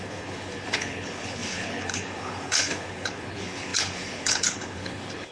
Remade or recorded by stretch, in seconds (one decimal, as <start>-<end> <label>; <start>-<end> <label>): 0.0-5.3 remade